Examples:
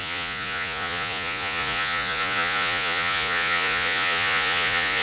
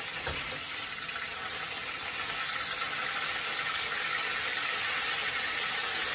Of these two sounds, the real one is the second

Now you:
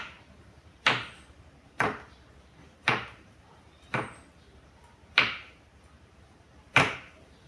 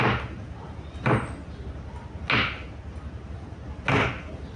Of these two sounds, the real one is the second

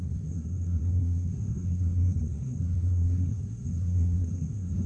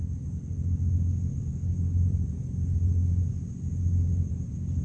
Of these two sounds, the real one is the second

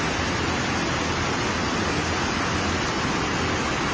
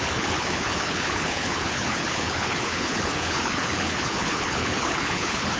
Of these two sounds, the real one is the first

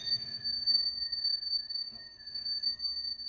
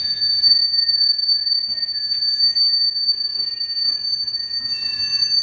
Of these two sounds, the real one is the second